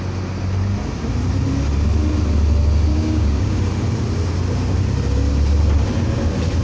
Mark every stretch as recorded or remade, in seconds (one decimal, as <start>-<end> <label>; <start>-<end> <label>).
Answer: 0.0-2.9 recorded; 2.9-3.6 remade; 3.6-6.6 recorded